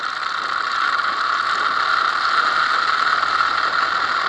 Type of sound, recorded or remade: recorded